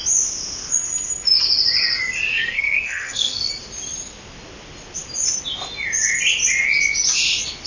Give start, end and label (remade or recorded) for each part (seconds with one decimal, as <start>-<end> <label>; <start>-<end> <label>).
0.0-2.3 recorded; 2.3-3.5 remade; 3.5-7.7 recorded